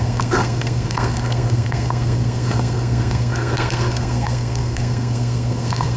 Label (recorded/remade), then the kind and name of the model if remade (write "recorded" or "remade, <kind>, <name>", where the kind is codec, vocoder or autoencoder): remade, codec, SNAC